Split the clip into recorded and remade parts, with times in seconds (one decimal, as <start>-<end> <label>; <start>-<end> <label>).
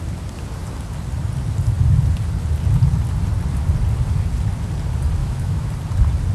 0.0-5.2 recorded; 5.2-5.7 remade; 5.7-6.3 recorded